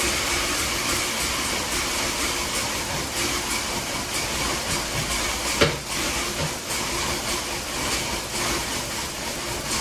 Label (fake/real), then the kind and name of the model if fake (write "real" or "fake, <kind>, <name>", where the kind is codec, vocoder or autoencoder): real